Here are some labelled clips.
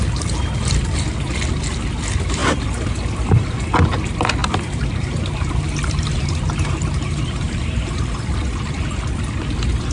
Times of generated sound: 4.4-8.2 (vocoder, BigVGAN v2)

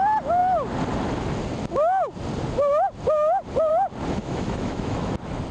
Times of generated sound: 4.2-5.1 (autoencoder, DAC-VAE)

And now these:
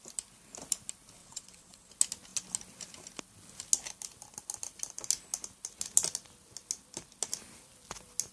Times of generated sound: 1.2-1.9 (vocoder, WaveNeXt)